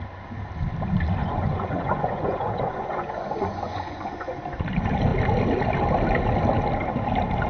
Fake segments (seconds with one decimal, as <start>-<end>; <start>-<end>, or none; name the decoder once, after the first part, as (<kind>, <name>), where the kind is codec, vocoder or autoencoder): 1.2-4.4 (vocoder, Vocos)